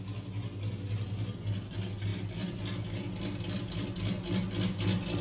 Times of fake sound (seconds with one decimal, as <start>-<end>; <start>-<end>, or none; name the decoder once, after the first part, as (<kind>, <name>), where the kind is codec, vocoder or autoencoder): none